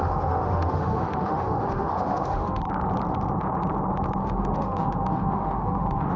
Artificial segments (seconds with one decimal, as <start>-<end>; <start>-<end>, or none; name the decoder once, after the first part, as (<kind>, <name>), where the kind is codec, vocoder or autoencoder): 0.0-2.6 (autoencoder, DAC-VAE); 4.2-6.2